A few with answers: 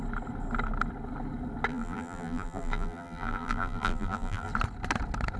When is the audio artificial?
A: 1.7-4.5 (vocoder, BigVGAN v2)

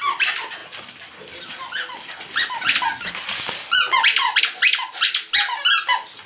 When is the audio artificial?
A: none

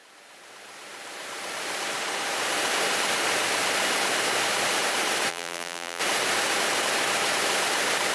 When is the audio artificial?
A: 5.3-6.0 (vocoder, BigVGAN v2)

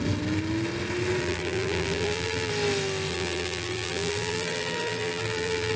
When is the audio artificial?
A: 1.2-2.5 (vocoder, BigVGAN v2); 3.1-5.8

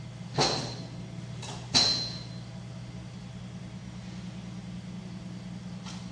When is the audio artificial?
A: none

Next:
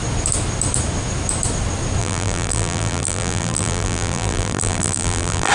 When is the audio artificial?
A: 2.0-5.5 (vocoder, BigVGAN v2)